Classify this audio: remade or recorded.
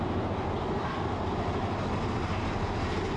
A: recorded